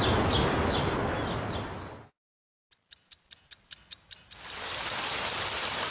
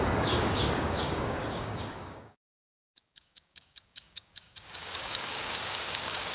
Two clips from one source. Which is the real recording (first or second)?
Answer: first